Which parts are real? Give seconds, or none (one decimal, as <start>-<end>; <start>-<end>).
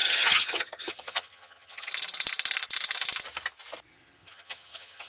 1.9-3.9